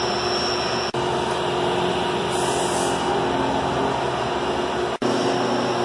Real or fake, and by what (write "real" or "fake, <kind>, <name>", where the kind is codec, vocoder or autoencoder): real